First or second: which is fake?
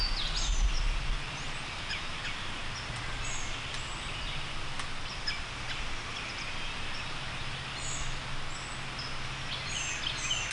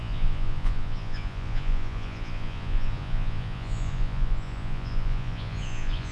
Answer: second